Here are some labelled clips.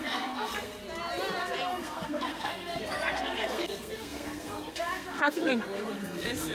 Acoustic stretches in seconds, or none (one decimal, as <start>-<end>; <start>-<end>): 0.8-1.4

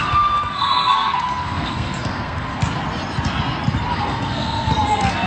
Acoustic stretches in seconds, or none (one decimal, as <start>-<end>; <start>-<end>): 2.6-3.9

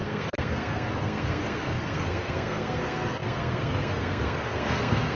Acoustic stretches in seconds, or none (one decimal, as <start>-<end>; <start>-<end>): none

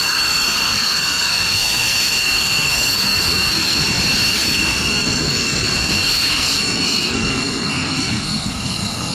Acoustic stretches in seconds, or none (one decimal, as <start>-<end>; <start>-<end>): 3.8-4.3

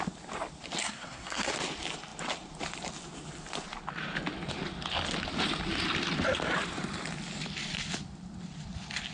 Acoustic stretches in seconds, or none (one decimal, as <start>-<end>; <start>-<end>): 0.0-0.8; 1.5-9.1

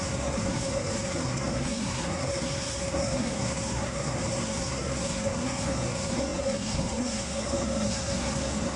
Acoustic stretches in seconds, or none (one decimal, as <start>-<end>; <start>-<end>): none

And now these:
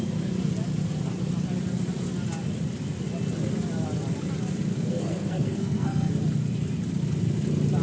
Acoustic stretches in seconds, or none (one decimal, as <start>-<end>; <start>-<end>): 0.0-4.7; 6.1-7.8

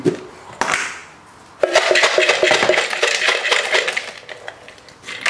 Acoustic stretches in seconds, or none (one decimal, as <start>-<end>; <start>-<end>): 0.0-5.3